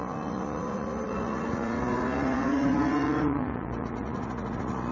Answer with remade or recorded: remade